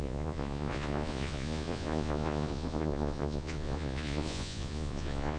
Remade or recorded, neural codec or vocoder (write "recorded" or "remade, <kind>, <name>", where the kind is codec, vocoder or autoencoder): remade, vocoder, Vocos